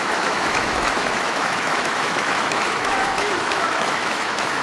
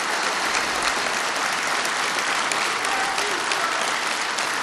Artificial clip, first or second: first